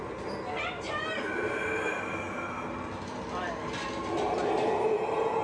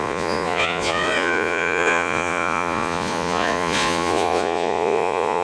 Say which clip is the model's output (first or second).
second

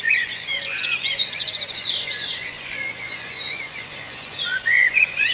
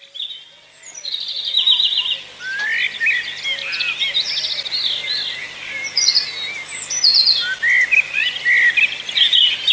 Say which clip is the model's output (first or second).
first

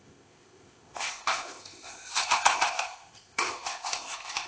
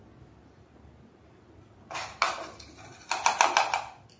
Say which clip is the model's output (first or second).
first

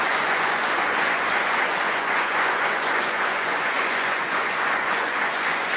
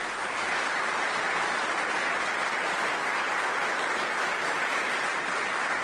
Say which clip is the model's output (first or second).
first